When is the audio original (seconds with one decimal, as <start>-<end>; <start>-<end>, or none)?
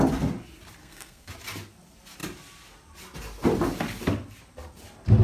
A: 0.0-0.8; 1.3-5.2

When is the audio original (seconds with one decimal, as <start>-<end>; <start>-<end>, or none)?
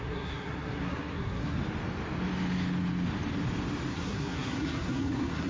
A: 1.6-3.9